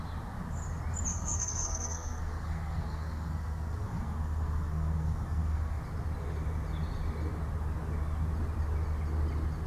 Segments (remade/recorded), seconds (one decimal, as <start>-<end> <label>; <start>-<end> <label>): 0.0-1.1 recorded; 1.1-5.8 remade; 5.8-9.7 recorded